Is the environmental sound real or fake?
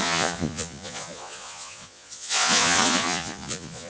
fake